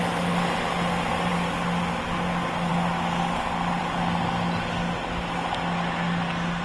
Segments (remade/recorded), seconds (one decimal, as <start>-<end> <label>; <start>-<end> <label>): 0.0-6.6 recorded